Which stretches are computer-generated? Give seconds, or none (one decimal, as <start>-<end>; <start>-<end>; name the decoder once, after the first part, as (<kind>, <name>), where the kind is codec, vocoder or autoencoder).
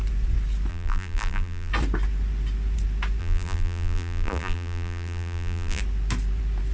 0.7-1.7 (vocoder, BigVGAN v2); 3.2-5.8